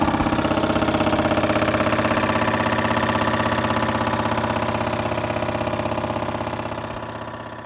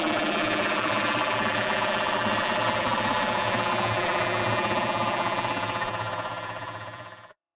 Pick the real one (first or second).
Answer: first